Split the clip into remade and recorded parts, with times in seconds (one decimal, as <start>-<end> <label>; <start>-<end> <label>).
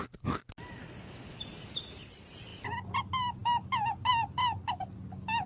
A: 0.0-5.5 recorded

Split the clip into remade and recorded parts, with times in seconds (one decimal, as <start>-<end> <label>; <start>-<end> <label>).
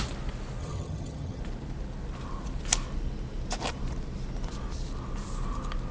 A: 0.0-0.6 recorded; 0.6-1.4 remade; 1.4-5.9 recorded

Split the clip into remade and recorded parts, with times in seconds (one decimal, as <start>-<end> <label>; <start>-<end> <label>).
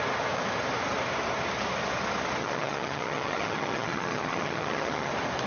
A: 0.0-2.4 recorded; 2.4-5.1 remade; 5.1-5.5 recorded